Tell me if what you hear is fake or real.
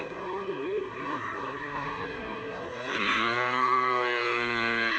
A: fake